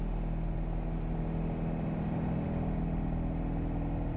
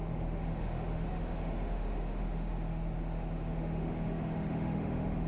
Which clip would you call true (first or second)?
first